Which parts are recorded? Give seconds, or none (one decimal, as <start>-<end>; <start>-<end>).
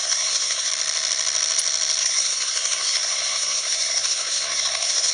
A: 0.7-2.0